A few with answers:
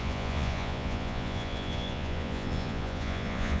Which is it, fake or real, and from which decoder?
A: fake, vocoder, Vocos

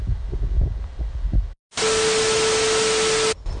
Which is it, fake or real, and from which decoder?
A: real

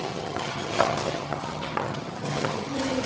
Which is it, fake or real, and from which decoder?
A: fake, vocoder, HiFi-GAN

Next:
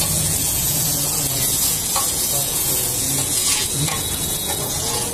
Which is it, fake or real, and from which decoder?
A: fake, vocoder, Vocos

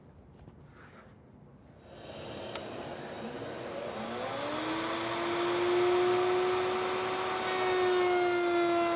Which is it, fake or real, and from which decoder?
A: real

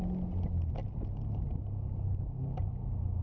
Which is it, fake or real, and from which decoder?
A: real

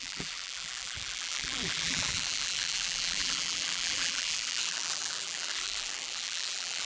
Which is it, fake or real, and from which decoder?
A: fake, vocoder, BigVGAN v2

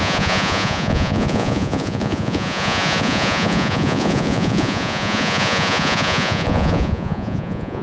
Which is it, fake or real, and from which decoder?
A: fake, vocoder, Vocos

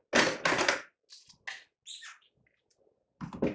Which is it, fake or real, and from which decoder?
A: real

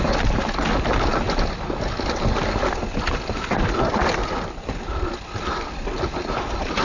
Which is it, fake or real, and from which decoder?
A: real